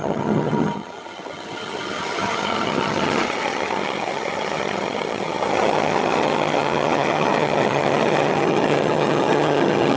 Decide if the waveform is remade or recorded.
remade